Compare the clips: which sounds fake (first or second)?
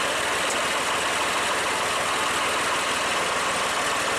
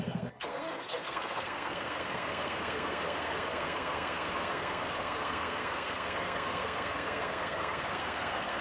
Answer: second